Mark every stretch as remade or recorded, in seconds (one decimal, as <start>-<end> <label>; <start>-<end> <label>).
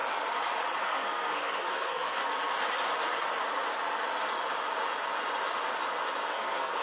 0.0-0.8 recorded; 0.8-2.2 remade; 2.2-6.3 recorded; 6.3-6.8 remade